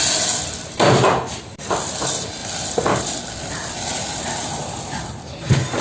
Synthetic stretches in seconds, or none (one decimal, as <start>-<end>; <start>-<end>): none